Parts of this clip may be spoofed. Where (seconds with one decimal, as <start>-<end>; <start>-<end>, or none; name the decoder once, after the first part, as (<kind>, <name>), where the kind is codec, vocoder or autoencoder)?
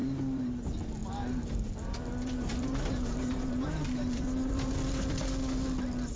0.0-0.6 (vocoder, BigVGAN v2); 1.0-4.7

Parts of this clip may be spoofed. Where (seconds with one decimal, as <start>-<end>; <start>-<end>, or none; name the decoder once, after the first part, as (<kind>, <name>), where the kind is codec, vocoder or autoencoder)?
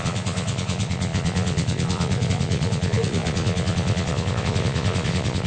0.0-5.5 (vocoder, Vocos)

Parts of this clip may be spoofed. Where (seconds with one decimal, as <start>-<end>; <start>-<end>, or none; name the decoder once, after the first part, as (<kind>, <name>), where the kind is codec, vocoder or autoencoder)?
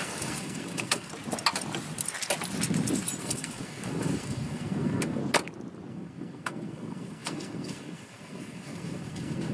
0.0-1.1 (codec, SNAC); 3.2-5.2; 5.9-9.5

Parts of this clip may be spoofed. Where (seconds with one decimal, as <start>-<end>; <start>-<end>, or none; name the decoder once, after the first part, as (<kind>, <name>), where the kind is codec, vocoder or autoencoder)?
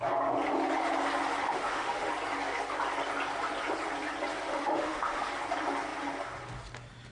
1.4-2.1 (autoencoder, DAC-VAE); 4.5-5.3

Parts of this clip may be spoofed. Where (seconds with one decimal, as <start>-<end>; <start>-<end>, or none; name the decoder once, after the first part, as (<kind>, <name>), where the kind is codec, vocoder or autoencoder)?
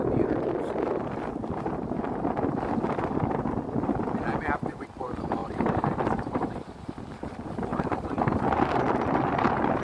5.4-6.5 (vocoder, BigVGAN v2); 7.7-8.4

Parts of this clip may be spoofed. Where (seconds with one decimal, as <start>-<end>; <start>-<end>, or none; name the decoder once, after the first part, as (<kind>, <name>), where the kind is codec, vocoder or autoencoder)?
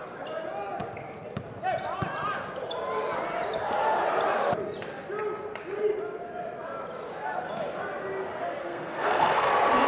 8.7-9.5 (codec, SNAC)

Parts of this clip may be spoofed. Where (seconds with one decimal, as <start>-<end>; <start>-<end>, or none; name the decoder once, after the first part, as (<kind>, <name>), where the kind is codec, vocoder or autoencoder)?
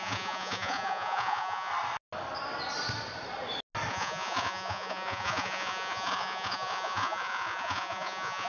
0.0-1.7 (vocoder, Vocos); 3.9-8.5